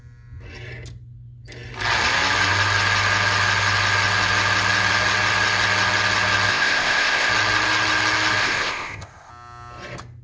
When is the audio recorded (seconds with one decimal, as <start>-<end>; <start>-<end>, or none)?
0.0-6.5; 7.3-8.4; 9.3-10.2